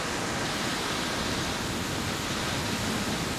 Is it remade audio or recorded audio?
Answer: recorded